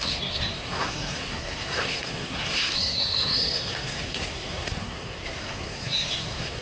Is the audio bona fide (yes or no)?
no